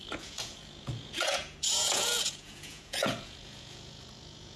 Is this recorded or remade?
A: remade